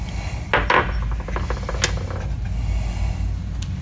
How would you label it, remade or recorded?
recorded